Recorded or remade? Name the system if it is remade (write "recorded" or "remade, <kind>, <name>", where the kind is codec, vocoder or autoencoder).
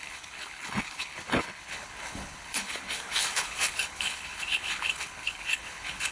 remade, codec, HILCodec